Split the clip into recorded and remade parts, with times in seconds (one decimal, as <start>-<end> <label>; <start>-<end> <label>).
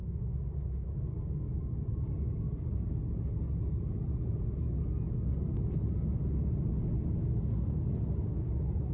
0.0-3.0 remade; 3.0-7.2 recorded; 7.2-8.9 remade